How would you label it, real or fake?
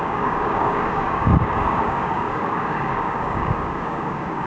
fake